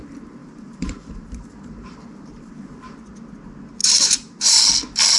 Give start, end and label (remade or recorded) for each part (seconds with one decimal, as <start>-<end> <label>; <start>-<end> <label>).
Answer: 0.0-0.4 recorded; 0.4-2.5 remade; 2.5-3.8 recorded; 3.8-4.6 remade; 4.6-5.2 recorded